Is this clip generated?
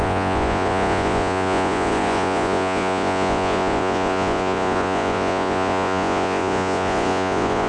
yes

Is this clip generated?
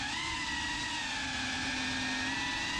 no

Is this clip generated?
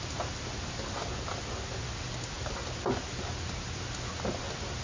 no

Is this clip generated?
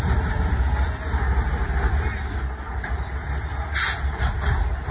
no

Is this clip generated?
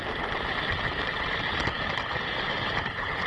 no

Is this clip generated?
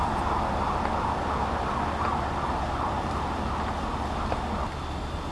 no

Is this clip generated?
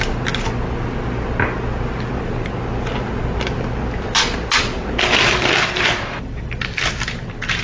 no